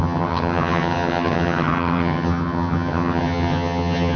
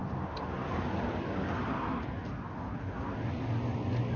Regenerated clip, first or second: first